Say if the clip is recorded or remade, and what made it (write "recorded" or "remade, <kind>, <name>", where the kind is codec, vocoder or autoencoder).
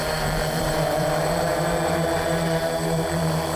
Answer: remade, vocoder, BigVGAN v2